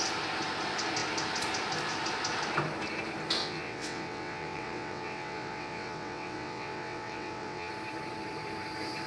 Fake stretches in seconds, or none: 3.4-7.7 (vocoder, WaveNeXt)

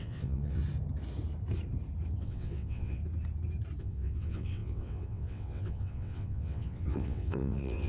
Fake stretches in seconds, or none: 0.0-0.6 (vocoder, WaveNeXt); 2.2-3.0; 3.8-7.9

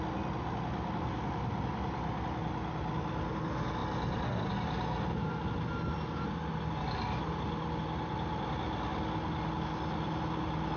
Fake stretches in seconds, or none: none

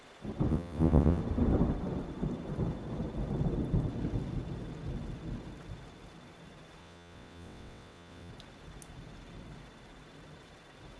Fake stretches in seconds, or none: 0.5-1.2 (vocoder, WaveNeXt); 6.8-8.3

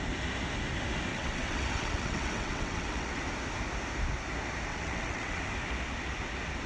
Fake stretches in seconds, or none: 1.1-3.2 (vocoder, WaveNeXt); 4.7-5.4

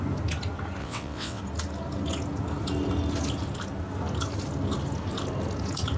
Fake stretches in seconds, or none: 0.8-1.4 (vocoder, WaveNeXt)

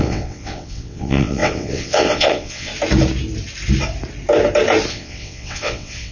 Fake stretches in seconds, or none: 0.0-2.7 (vocoder, WaveNeXt); 4.9-6.1

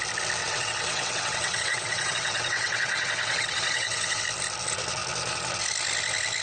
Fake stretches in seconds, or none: 0.4-4.2 (vocoder, WaveNeXt)